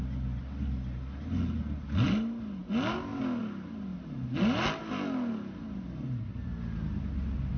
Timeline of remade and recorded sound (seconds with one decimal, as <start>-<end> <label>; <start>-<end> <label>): 0.0-7.6 recorded